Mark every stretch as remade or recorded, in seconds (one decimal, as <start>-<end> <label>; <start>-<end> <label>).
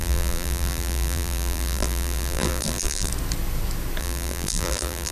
0.0-3.1 remade; 3.1-4.0 recorded; 4.0-5.1 remade